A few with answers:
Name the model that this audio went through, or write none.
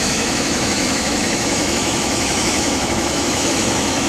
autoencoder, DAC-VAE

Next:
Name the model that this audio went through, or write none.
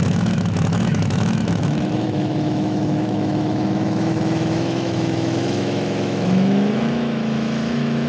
autoencoder, DAC-VAE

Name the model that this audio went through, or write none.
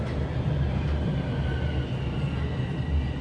none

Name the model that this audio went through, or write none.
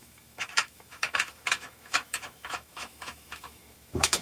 autoencoder, DAC-VAE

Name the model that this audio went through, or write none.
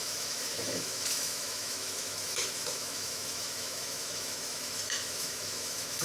autoencoder, DAC-VAE